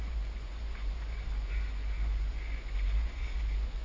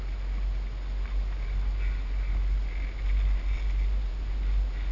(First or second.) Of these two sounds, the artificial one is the first